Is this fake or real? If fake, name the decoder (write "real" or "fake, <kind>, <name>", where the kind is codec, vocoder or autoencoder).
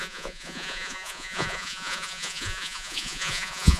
fake, vocoder, Vocos